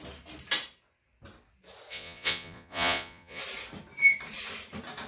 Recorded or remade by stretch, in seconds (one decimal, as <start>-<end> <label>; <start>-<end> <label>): 0.0-1.9 recorded; 1.9-3.4 remade; 3.4-5.1 recorded